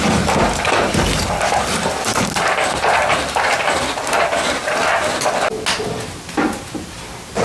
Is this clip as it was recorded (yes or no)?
yes